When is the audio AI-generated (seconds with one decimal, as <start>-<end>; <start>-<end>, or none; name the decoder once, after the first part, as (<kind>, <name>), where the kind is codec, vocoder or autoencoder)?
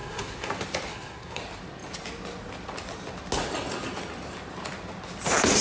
0.0-0.5 (codec, SNAC); 0.9-1.4